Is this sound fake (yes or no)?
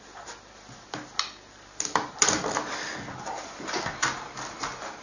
no